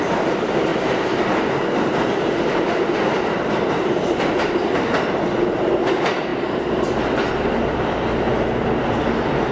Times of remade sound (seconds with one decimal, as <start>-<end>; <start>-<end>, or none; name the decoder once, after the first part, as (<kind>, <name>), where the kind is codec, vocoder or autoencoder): 0.0-0.7 (vocoder, BigVGAN v2); 1.7-9.5